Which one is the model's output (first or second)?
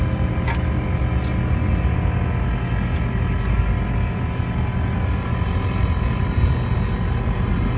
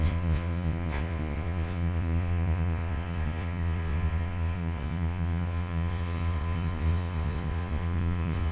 second